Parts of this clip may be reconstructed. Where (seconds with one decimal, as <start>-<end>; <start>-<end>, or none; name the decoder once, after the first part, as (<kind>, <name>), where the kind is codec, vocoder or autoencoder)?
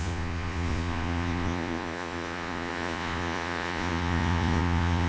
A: 0.0-5.1 (vocoder, Vocos)